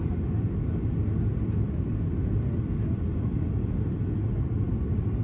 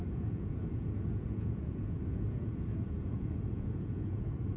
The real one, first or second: first